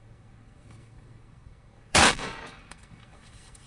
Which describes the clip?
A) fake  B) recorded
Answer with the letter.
A